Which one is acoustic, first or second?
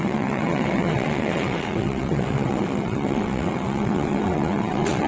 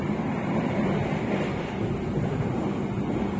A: second